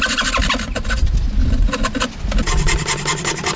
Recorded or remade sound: recorded